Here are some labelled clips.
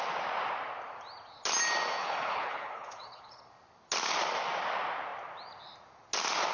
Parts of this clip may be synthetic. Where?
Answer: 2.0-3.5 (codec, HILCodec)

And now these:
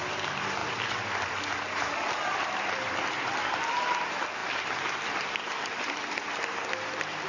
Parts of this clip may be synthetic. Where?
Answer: 0.6-3.4 (vocoder, BigVGAN v2)